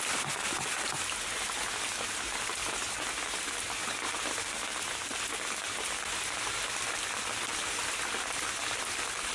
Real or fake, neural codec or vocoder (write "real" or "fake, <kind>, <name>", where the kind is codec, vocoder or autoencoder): real